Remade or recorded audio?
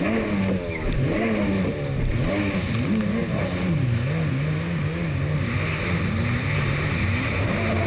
recorded